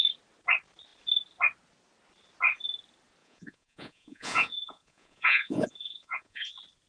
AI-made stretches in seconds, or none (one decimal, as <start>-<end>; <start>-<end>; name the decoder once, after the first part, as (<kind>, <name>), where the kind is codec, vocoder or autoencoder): 3.2-6.5 (vocoder, Vocos)